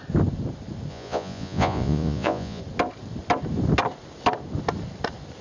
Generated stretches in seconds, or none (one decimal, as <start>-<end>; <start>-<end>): 0.9-2.6